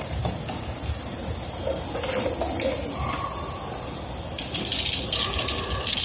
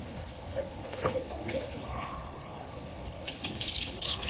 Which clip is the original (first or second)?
first